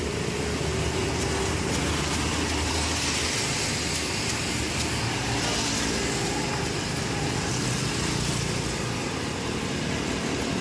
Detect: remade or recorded recorded